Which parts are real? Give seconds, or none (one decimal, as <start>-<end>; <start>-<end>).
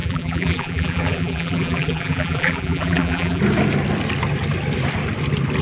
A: 3.4-5.6